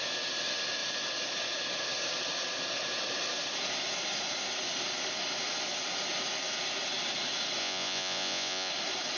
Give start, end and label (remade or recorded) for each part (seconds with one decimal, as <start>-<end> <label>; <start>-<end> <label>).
0.0-7.6 recorded; 7.6-8.7 remade; 8.7-9.2 recorded